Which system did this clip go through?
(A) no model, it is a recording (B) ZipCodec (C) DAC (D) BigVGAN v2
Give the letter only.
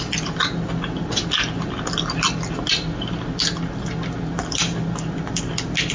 A